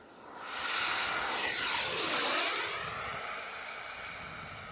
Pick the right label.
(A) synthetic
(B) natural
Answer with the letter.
B